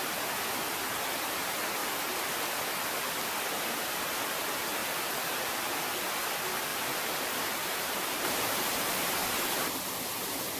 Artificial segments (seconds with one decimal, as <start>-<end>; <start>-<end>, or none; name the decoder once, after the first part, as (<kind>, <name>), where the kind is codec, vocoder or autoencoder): 6.7-9.8 (vocoder, BigVGAN v2)